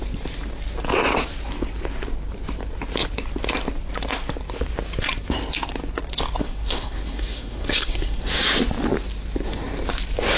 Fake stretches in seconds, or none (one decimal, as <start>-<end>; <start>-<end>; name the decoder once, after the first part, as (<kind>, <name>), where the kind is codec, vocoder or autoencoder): 6.4-8.2 (codec, SNAC)